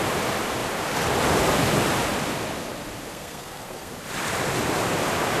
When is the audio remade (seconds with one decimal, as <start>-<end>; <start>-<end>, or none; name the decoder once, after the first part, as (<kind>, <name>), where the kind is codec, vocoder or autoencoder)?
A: 3.1-3.9 (codec, SNAC)